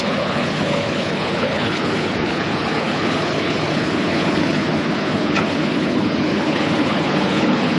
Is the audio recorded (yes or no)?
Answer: no